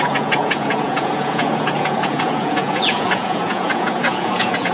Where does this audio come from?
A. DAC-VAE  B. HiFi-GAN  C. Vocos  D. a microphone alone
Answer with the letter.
C